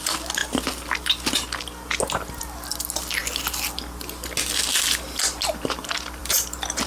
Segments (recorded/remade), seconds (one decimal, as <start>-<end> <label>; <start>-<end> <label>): 0.0-6.9 recorded